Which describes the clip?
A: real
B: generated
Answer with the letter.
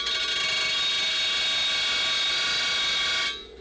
A